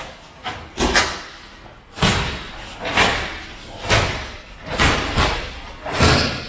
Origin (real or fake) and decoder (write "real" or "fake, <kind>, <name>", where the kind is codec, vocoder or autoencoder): real